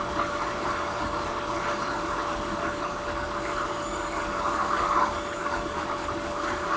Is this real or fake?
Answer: fake